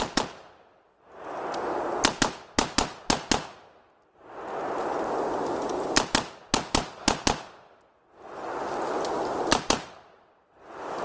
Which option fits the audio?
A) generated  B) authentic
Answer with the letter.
B